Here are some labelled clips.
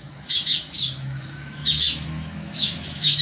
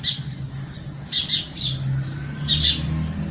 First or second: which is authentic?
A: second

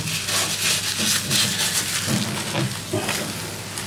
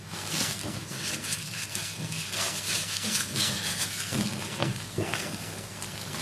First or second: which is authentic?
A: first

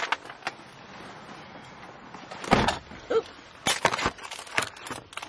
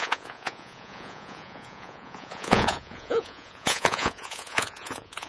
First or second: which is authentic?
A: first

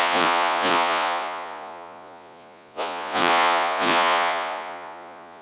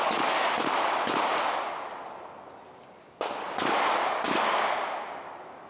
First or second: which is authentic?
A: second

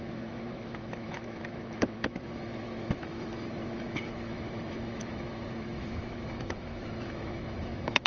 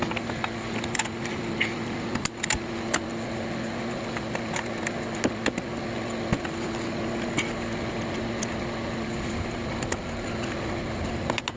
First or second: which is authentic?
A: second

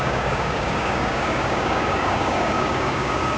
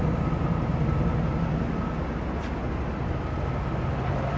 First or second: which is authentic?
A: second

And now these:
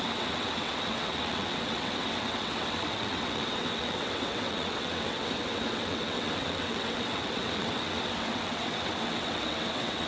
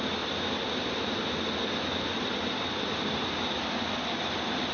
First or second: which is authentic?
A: second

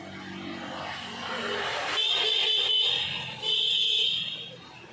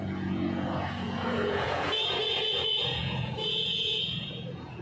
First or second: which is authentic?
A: first